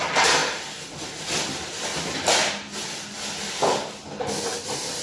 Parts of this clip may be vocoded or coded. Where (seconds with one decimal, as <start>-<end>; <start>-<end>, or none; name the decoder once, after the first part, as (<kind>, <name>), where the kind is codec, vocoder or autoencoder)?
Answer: none